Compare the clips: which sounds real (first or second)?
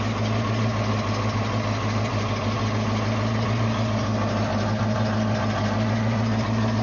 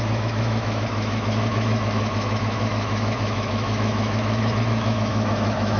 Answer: first